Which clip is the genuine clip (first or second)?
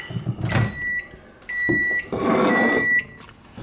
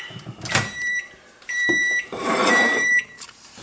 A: first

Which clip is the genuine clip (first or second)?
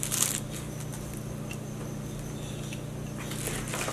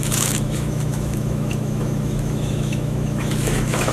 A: first